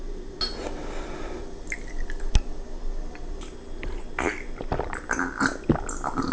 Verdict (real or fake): real